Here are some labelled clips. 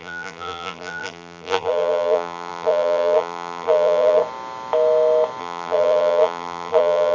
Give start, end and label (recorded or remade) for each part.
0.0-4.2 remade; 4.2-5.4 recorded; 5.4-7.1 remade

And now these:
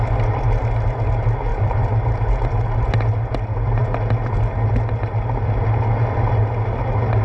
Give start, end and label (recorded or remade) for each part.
0.0-1.5 recorded; 1.5-2.9 remade; 2.9-7.2 recorded